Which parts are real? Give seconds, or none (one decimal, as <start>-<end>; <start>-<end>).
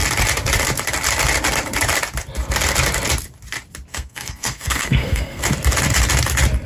0.0-3.9; 5.4-6.7